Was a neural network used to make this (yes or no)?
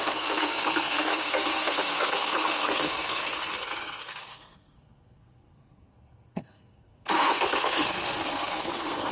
yes